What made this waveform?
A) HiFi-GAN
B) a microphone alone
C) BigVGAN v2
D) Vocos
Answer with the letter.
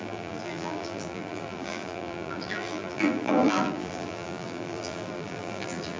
C